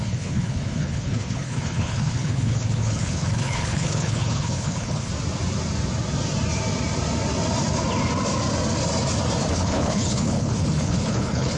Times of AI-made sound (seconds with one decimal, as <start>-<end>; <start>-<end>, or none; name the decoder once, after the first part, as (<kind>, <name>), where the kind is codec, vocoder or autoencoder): 0.0-5.1 (codec, HILCodec); 9.5-11.6